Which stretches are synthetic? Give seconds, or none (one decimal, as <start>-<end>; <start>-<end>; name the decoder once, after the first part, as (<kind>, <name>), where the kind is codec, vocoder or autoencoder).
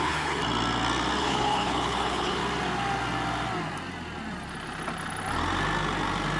0.0-0.4 (codec, HILCodec); 1.2-2.4